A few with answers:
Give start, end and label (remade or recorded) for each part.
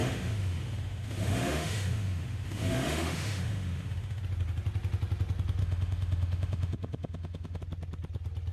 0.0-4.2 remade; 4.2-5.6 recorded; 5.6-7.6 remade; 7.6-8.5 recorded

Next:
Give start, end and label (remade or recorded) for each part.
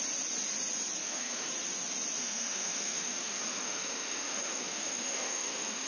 0.0-1.0 recorded; 1.0-1.5 remade; 1.5-2.2 recorded; 2.2-5.9 remade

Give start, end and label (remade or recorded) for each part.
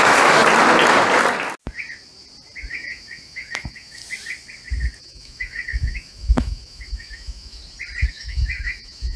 0.0-0.4 remade; 0.4-2.7 recorded; 2.7-4.0 remade; 4.0-5.0 recorded; 5.0-7.6 remade; 7.6-8.1 recorded; 8.1-9.2 remade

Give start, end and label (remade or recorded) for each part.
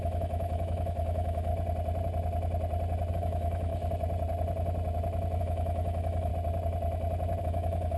0.0-1.5 remade; 1.5-3.1 recorded; 3.1-3.7 remade; 3.7-5.4 recorded; 5.4-6.3 remade; 6.3-7.4 recorded; 7.4-8.0 remade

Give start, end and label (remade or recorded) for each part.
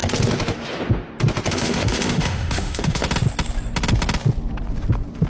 0.0-1.5 recorded; 1.5-3.0 remade; 3.0-5.3 recorded